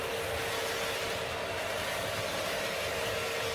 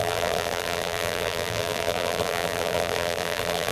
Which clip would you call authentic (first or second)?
first